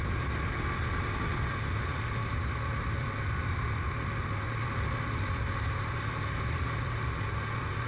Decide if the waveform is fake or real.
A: real